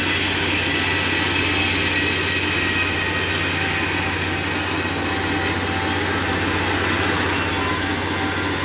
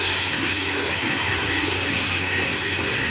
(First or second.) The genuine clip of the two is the first